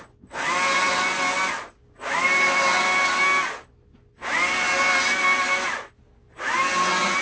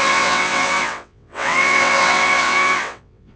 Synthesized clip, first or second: second